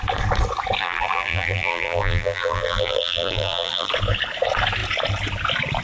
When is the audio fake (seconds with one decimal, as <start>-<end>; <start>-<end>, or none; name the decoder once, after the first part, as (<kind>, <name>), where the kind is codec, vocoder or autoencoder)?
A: 0.8-3.9 (vocoder, BigVGAN v2)